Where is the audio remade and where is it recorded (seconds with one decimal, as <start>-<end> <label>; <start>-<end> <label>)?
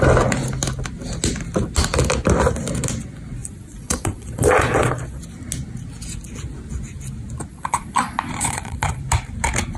0.0-3.4 recorded; 3.4-5.2 remade; 5.2-7.5 recorded; 7.5-9.0 remade; 9.0-9.8 recorded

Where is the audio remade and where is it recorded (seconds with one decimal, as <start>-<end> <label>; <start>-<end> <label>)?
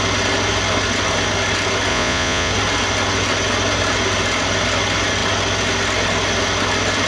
0.0-1.9 recorded; 1.9-2.5 remade; 2.5-7.1 recorded